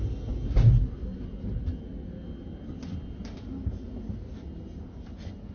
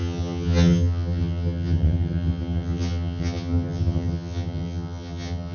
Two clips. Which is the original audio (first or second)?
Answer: first